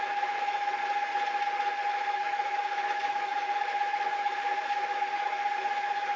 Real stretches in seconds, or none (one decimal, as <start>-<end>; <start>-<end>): 0.8-1.9